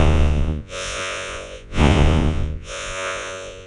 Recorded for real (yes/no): no